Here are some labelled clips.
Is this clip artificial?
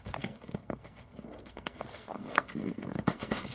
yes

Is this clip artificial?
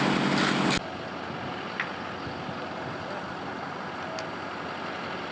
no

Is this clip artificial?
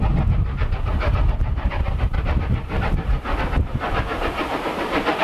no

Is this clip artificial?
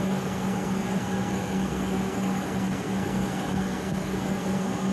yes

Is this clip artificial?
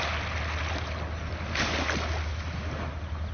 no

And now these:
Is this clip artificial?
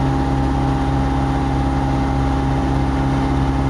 no